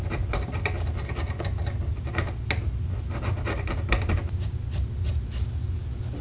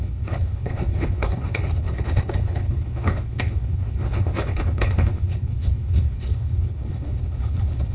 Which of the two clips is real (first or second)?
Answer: first